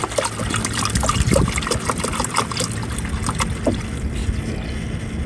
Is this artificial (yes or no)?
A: no